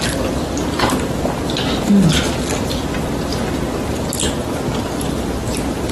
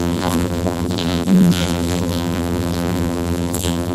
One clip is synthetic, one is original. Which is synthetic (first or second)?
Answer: second